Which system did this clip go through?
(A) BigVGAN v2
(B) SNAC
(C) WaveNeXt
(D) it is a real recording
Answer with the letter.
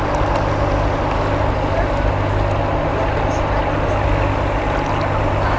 D